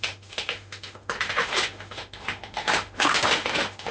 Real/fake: fake